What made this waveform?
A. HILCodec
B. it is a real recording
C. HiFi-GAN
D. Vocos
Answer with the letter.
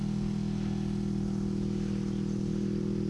B